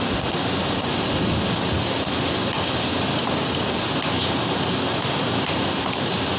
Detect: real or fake real